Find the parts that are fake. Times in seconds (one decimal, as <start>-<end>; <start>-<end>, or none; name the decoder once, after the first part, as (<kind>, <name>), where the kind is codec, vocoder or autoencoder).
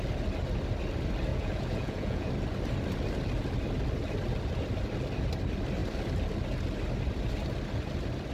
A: 1.3-2.3 (vocoder, Vocos)